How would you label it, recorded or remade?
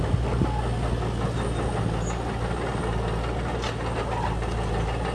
recorded